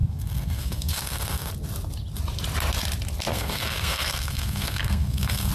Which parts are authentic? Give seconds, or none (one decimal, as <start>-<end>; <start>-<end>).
1.5-3.3